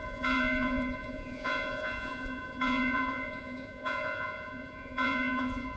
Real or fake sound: fake